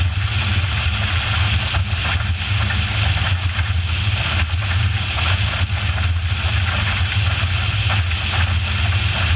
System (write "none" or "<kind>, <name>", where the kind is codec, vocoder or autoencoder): none